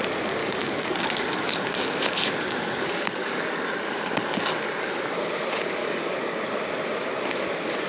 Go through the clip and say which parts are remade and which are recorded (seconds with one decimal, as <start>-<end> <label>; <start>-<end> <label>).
0.0-0.4 recorded; 0.4-2.3 remade; 2.3-3.2 recorded; 3.2-4.9 remade; 4.9-5.8 recorded; 5.8-6.4 remade; 6.4-7.9 recorded